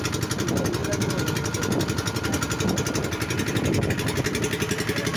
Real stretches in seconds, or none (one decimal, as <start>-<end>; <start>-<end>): 0.0-5.2